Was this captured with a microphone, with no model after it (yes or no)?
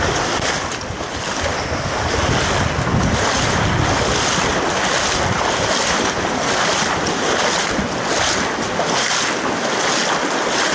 yes